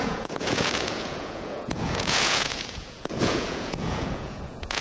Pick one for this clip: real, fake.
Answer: fake